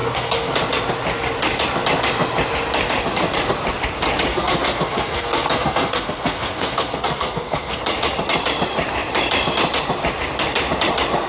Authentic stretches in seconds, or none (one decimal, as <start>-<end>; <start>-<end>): 0.5-4.3; 7.8-11.3